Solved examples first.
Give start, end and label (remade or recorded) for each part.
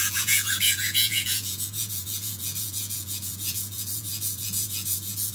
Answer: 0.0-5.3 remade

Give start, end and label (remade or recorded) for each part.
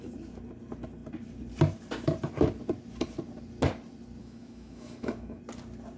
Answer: 0.0-4.2 recorded; 4.2-5.4 remade; 5.4-6.0 recorded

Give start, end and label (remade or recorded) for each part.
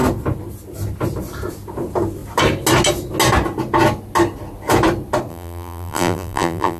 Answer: 0.0-5.3 recorded; 5.3-6.8 remade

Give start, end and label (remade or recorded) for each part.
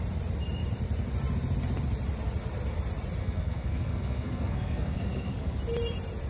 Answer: 0.0-3.2 recorded; 3.2-5.6 remade; 5.6-6.3 recorded